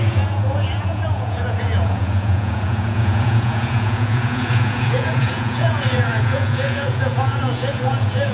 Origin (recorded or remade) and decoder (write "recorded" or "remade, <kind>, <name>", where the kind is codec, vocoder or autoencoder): remade, vocoder, Vocos